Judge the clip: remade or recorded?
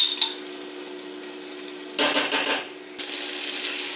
recorded